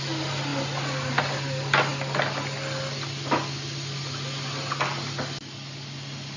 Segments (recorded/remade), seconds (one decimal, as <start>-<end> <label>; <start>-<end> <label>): 0.0-6.4 recorded